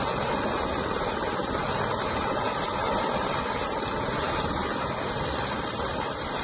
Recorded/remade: remade